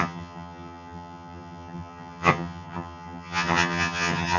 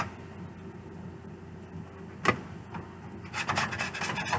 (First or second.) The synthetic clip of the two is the first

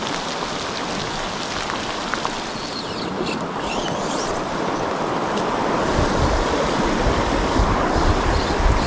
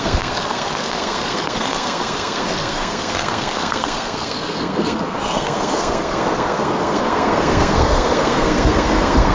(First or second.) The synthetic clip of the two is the second